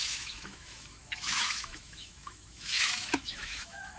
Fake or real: fake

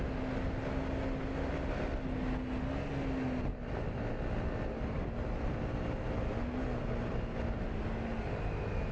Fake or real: real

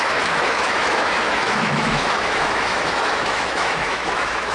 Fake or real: fake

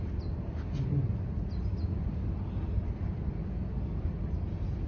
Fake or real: real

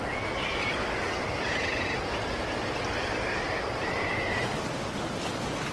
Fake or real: real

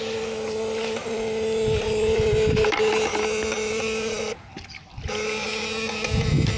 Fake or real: real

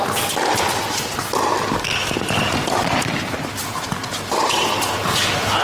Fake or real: real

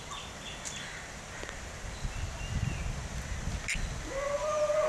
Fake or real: real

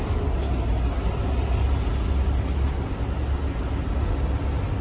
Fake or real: real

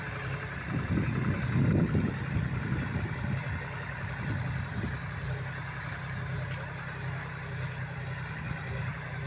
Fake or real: real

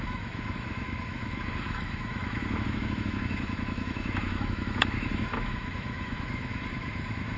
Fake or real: fake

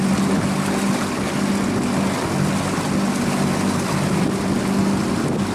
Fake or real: real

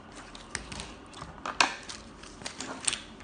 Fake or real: real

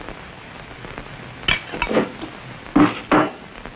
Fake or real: real